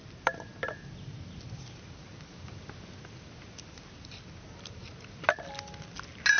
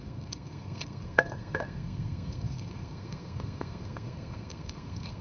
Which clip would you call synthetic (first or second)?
second